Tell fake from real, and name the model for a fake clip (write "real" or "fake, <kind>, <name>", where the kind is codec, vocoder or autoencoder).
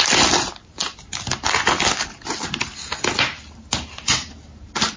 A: real